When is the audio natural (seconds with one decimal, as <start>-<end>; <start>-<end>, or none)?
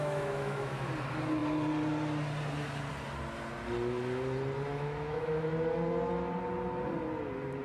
0.9-4.7; 5.5-7.6